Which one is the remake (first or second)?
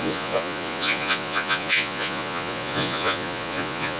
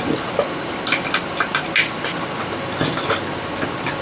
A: first